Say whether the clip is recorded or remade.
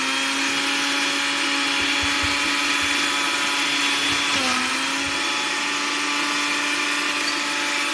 recorded